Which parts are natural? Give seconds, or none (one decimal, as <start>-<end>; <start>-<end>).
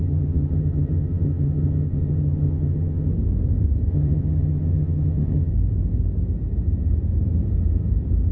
3.1-3.9; 5.5-8.3